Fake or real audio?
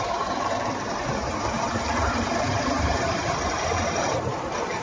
fake